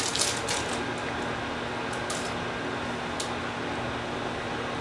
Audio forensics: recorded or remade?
recorded